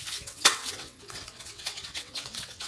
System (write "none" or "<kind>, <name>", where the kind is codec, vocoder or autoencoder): vocoder, WaveNeXt